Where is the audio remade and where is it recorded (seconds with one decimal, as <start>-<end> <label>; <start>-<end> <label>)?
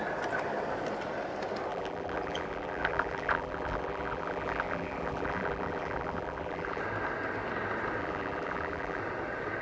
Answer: 0.0-1.7 recorded; 1.7-6.8 remade; 6.8-8.0 recorded; 8.0-9.0 remade; 9.0-9.6 recorded